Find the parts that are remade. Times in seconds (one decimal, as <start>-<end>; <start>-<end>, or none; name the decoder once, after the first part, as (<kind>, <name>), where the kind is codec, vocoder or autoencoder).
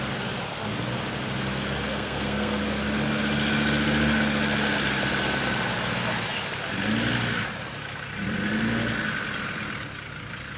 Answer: 1.9-2.6 (codec, SNAC)